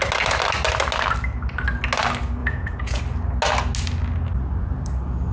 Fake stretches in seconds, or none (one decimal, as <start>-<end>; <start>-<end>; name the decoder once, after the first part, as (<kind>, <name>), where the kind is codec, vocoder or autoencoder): 2.4-3.0 (vocoder, Vocos)

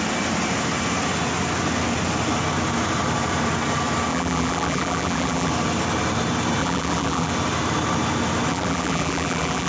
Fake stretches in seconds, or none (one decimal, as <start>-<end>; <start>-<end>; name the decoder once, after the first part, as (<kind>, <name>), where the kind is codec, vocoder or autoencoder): 4.1-5.5 (vocoder, BigVGAN v2); 6.6-7.3; 8.5-9.7

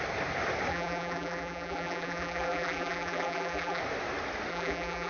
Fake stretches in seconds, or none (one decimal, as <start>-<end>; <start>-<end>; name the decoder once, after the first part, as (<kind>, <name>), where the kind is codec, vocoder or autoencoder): 0.7-3.8 (vocoder, BigVGAN v2); 4.5-5.1

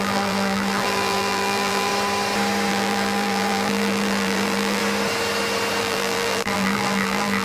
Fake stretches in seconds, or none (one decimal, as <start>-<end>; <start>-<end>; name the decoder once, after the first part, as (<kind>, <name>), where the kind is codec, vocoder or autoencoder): 0.0-1.9 (vocoder, BigVGAN v2); 2.7-4.8; 5.8-7.4

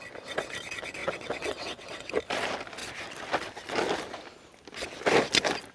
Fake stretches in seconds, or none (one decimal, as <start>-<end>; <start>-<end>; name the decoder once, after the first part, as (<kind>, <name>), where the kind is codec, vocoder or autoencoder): 1.0-2.1 (vocoder, WaveNeXt)

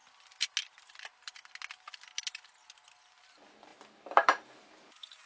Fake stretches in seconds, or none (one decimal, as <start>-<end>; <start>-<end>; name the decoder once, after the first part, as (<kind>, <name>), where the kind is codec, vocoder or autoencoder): 3.1-5.3 (vocoder, BigVGAN v2)

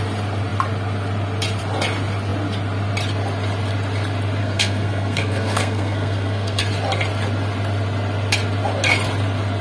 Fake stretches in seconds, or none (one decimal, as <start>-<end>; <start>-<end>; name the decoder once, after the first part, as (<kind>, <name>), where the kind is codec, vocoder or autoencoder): 4.4-6.6 (codec, SNAC)